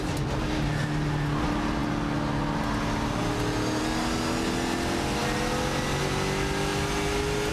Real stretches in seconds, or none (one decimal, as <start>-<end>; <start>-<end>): 0.0-7.5